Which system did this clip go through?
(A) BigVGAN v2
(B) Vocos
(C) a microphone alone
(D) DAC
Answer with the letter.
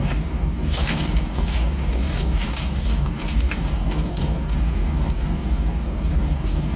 D